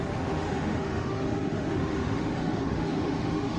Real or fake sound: fake